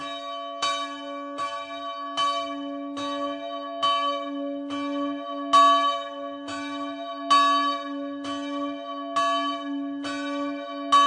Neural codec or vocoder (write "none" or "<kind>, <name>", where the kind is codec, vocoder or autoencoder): none